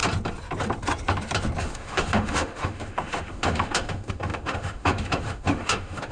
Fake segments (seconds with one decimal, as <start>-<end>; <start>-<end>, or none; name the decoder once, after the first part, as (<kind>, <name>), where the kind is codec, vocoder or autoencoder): 1.6-6.1 (autoencoder, DAC-VAE)